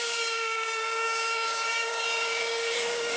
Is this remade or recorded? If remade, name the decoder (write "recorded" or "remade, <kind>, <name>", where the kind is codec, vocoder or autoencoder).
remade, codec, DAC